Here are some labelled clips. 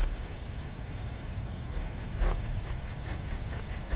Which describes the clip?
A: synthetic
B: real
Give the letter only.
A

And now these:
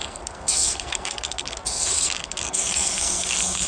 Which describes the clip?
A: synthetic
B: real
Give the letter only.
A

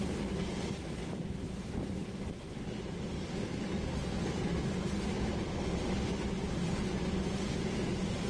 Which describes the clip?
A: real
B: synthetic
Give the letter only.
A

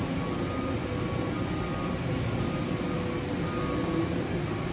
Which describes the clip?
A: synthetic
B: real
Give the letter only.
B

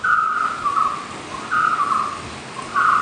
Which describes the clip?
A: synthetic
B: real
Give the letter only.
B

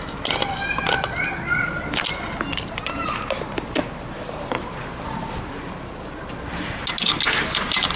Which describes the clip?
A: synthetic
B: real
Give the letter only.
B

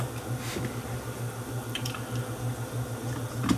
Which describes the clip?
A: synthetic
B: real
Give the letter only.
B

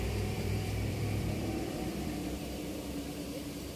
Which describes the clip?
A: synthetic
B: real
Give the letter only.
A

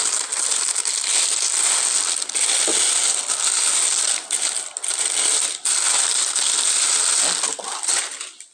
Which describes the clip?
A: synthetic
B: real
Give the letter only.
B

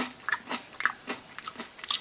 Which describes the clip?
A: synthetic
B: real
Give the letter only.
B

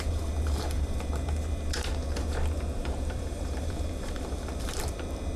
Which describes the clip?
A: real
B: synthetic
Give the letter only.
B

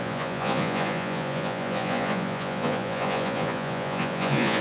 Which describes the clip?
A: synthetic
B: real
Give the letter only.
A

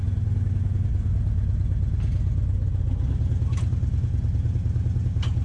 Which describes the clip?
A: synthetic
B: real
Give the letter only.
B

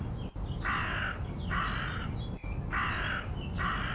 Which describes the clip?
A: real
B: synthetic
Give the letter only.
A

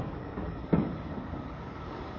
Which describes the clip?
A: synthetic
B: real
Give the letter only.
A